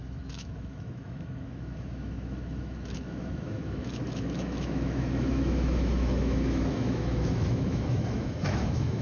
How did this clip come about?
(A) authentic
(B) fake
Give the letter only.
B